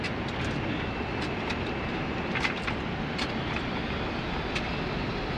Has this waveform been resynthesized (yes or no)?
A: yes